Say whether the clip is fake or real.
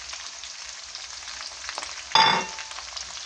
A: real